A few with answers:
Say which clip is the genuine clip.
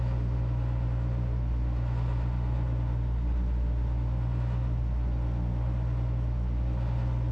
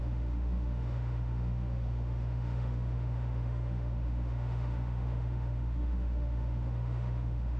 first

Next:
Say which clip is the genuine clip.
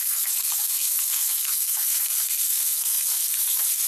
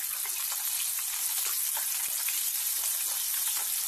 second